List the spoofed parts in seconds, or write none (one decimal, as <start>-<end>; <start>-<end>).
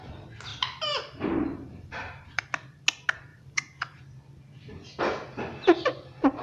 0.5-2.4; 3.3-4.0